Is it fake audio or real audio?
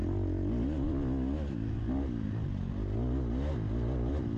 real